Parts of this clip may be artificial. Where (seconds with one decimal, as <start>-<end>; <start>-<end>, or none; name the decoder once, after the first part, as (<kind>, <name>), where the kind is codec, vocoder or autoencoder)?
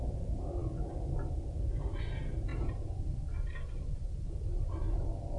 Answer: 2.5-5.4 (vocoder, BigVGAN v2)